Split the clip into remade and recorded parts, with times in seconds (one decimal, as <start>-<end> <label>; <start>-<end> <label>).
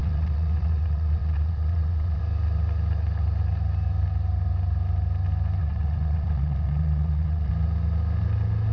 0.0-2.2 remade; 2.2-5.6 recorded; 5.6-7.5 remade; 7.5-8.7 recorded